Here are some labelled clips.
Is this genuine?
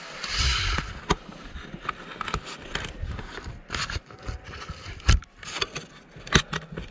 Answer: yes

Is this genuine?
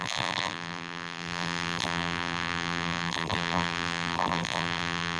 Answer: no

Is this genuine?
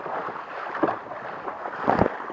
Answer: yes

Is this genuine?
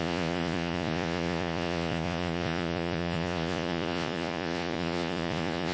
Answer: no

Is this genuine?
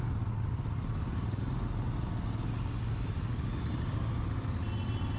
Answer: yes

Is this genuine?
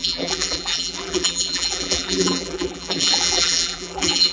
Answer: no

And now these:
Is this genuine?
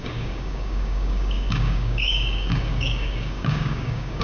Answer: no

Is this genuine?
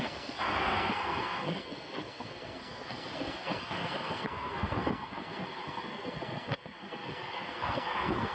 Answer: no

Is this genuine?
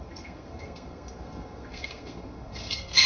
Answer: no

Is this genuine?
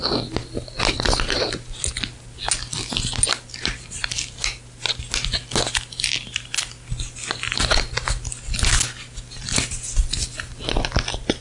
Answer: yes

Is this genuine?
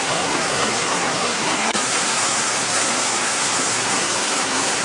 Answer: no